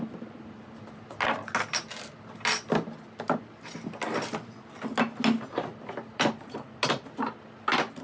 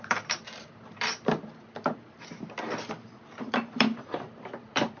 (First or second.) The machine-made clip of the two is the second